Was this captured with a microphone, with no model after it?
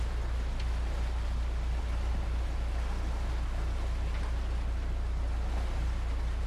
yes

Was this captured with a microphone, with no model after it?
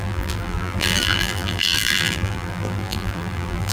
no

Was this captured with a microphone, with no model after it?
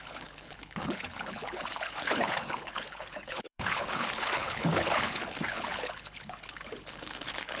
no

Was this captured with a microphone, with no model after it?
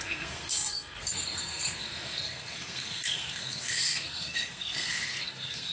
no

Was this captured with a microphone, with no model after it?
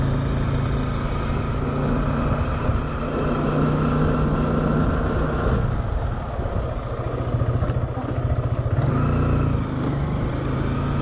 yes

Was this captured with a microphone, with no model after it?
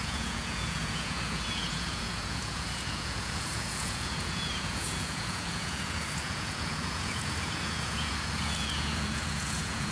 no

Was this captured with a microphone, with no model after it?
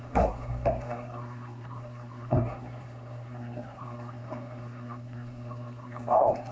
no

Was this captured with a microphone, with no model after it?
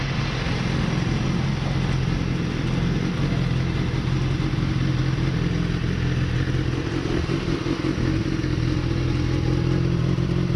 yes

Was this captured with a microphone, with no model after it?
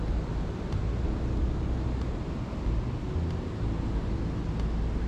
yes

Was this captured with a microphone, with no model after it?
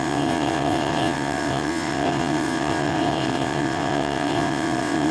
no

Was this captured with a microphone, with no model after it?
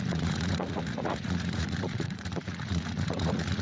no